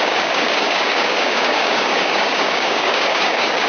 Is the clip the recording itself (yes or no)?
no